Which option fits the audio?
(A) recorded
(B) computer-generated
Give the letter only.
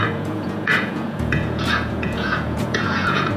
B